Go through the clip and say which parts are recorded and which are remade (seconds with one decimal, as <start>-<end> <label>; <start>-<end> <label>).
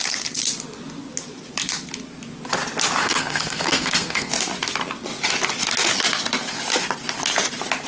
0.0-3.0 recorded; 3.0-4.3 remade; 4.3-7.9 recorded